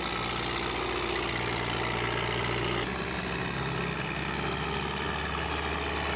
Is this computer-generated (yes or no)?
no